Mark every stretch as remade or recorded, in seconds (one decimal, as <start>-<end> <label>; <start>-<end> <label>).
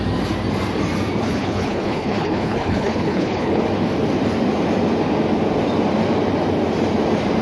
0.0-1.2 recorded; 1.2-3.6 remade; 3.6-7.4 recorded